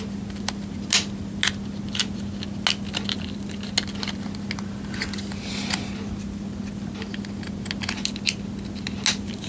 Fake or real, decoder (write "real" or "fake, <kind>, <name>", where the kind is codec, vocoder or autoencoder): real